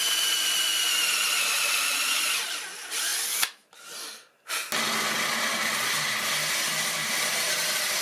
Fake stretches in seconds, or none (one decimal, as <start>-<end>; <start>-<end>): none